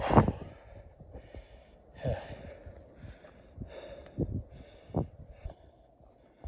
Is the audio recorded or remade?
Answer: recorded